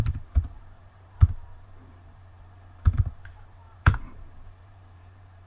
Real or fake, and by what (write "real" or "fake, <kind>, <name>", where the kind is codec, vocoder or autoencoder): fake, vocoder, BigVGAN v2